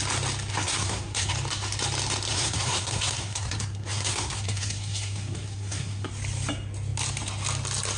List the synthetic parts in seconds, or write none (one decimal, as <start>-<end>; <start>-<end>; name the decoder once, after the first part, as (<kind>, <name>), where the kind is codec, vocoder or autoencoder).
0.5-1.3 (codec, SNAC); 2.3-6.1